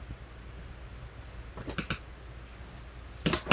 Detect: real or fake real